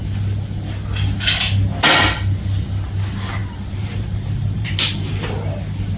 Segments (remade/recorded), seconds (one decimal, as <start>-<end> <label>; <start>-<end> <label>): 0.0-3.4 recorded; 3.4-4.7 remade; 4.7-6.0 recorded